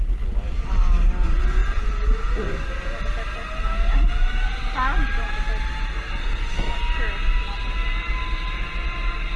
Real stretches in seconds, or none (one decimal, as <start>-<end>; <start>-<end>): 0.0-6.2; 6.7-9.4